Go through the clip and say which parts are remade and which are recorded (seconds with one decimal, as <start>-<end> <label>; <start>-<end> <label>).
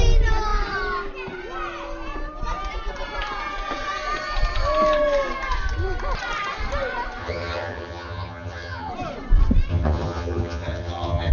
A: 0.0-7.2 recorded; 7.2-8.9 remade; 8.9-9.7 recorded; 9.7-11.3 remade